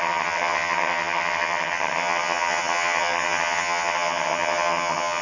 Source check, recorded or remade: remade